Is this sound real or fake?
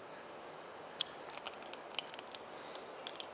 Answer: real